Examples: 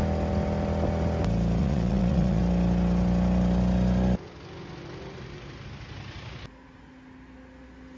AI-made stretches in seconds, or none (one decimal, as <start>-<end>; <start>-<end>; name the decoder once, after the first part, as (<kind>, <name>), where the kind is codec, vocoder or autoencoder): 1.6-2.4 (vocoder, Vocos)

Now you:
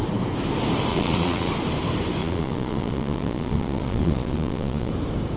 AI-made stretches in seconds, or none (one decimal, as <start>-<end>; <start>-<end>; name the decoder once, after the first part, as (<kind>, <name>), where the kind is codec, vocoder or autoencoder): 0.9-1.5 (vocoder, Vocos); 2.2-4.9

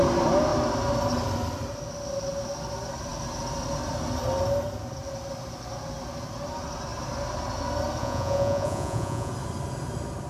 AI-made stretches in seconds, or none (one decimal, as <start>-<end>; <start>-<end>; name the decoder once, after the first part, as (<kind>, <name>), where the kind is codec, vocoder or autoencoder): 8.0-9.3 (vocoder, Vocos)

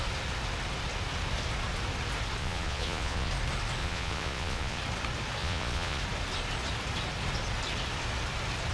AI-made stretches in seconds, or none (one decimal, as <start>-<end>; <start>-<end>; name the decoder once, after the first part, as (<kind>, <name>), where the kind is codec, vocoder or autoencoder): 2.4-3.3 (vocoder, Vocos); 3.8-4.8; 5.4-6.0